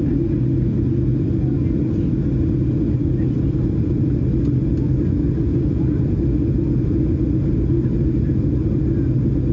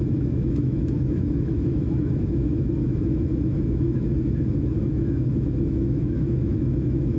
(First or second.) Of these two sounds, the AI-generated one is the second